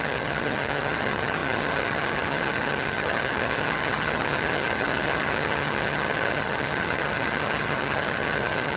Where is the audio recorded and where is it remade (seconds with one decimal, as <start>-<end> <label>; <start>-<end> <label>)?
0.0-8.8 remade